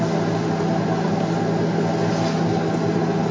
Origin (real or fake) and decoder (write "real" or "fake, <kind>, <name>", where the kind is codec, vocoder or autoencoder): real